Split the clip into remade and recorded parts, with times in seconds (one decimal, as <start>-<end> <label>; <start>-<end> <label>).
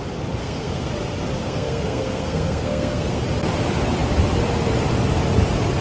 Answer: 0.0-0.4 recorded; 0.4-0.9 remade; 0.9-1.4 recorded; 1.4-3.2 remade; 3.2-5.8 recorded